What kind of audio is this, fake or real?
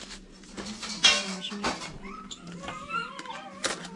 real